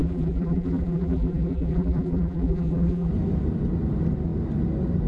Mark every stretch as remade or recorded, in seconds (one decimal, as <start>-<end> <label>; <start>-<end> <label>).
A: 0.0-3.1 remade; 3.1-5.1 recorded